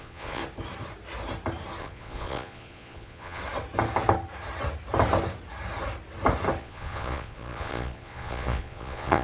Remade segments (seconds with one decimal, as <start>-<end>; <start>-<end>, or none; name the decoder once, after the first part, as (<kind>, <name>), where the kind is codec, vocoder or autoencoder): 0.0-0.4 (vocoder, Vocos); 1.8-3.4; 6.6-9.2